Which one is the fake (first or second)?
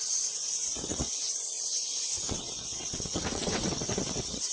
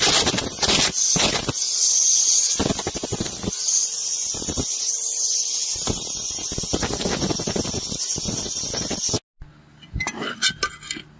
first